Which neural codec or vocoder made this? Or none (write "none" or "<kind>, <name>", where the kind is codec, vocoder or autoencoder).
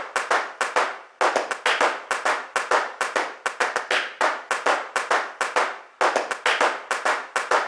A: none